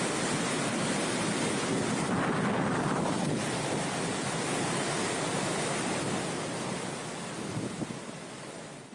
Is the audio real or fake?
real